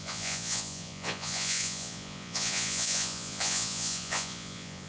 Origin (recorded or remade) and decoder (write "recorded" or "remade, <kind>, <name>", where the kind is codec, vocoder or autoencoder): remade, vocoder, Vocos